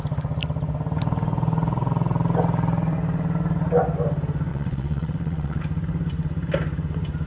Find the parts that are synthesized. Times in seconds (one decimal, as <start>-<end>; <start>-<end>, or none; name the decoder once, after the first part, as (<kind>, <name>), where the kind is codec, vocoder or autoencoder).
4.5-5.6 (vocoder, WaveNeXt)